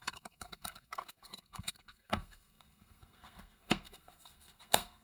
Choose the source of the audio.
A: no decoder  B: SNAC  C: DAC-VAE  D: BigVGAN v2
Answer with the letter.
B